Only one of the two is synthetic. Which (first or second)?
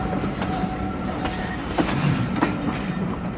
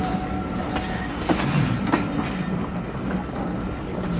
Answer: first